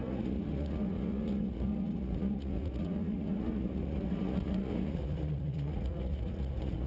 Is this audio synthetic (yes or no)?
yes